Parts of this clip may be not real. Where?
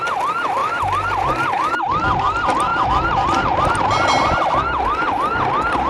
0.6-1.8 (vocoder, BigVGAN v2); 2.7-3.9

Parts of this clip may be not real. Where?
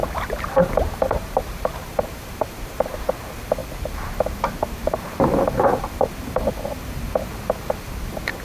0.0-1.4 (vocoder, BigVGAN v2); 1.9-3.1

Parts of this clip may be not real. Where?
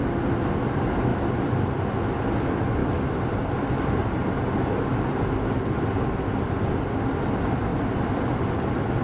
1.1-1.7 (vocoder, BigVGAN v2); 7.7-8.3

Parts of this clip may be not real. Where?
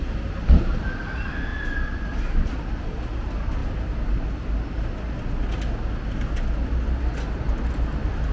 1.5-3.0 (vocoder, BigVGAN v2)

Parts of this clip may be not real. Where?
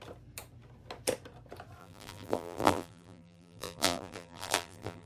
1.8-5.1 (vocoder, BigVGAN v2)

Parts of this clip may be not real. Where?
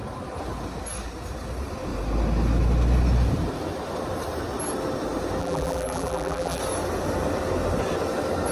5.4-6.6 (vocoder, BigVGAN v2)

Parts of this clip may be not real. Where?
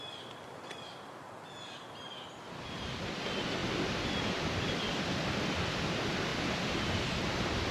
3.6-5.5 (vocoder, BigVGAN v2)